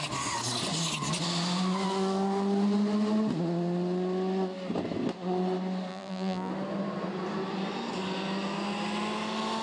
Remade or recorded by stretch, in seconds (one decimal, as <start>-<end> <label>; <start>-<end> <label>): 0.0-5.9 recorded; 5.9-6.5 remade; 6.5-9.6 recorded